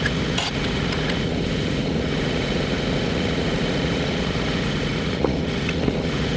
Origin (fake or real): fake